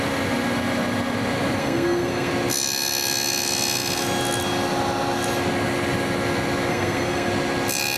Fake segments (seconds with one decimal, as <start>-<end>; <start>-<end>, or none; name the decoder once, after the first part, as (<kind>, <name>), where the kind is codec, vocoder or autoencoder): 1.6-2.3 (codec, SNAC); 6.7-7.3